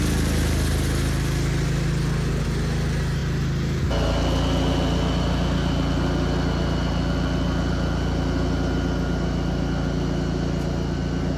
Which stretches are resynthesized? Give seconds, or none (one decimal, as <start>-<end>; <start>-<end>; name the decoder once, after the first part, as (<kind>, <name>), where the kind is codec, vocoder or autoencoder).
none